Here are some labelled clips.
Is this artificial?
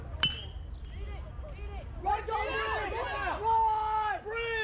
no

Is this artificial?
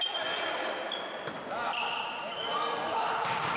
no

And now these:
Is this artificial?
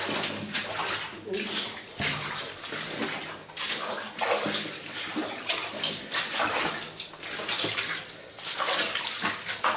no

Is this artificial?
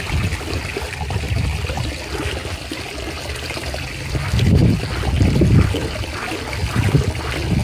no